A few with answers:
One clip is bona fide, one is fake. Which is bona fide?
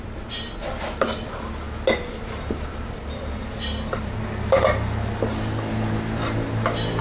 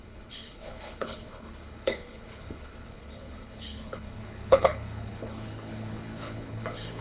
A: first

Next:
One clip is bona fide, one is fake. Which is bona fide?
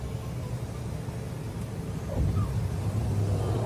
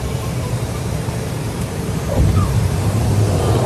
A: first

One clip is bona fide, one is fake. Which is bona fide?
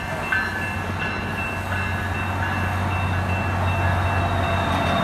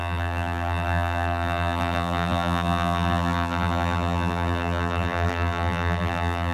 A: first